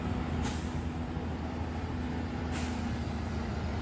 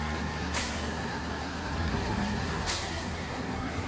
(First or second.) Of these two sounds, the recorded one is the first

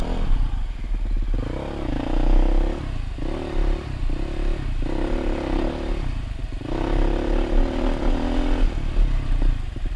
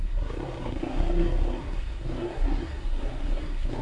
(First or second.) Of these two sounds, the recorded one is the first